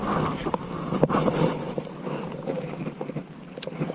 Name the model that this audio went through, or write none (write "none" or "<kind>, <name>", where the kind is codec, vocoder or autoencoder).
none